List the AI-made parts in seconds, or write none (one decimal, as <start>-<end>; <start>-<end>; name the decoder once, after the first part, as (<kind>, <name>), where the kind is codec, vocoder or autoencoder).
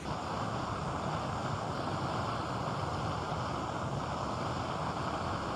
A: none